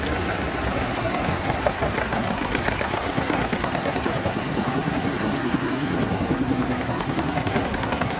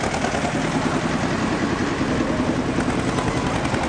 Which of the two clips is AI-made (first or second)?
first